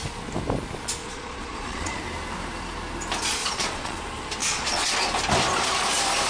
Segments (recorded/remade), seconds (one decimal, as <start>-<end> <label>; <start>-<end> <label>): 0.0-1.0 recorded; 1.0-2.0 remade; 2.0-3.4 recorded; 3.4-4.0 remade; 4.0-4.4 recorded; 4.4-4.9 remade; 4.9-6.3 recorded